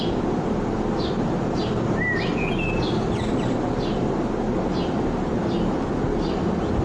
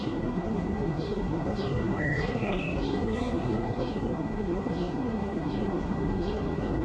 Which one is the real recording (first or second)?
first